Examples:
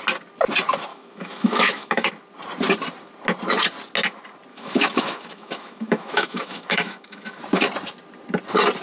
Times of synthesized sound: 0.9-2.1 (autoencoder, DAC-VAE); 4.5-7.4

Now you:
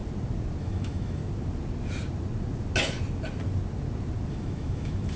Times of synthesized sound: 0.6-1.2 (autoencoder, DAC-VAE); 4.3-5.2

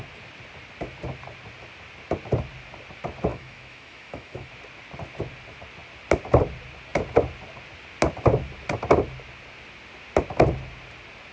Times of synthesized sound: 3.3-4.5 (autoencoder, DAC-VAE)

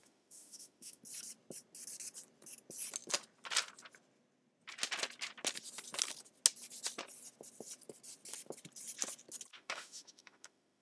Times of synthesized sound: 0.0-1.0 (autoencoder, DAC-VAE); 9.5-10.8

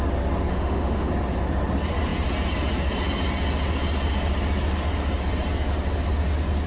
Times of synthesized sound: 0.5-1.1 (autoencoder, DAC-VAE)

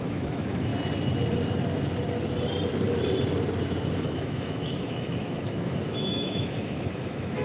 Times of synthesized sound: 0.0-0.7 (autoencoder, DAC-VAE); 4.0-7.4

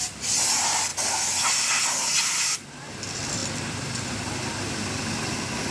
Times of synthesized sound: none

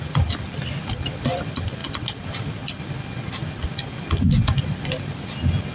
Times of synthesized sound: none